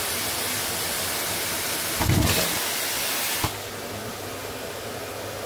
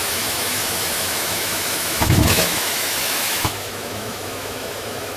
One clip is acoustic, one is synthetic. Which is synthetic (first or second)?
second